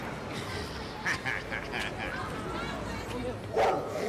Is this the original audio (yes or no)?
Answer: yes